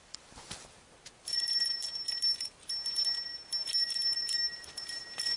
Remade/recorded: recorded